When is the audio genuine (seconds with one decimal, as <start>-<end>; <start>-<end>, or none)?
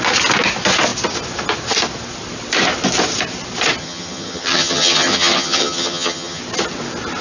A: 0.0-3.8; 6.4-7.2